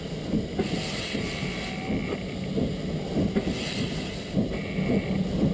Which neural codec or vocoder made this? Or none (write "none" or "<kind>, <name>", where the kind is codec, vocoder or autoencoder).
none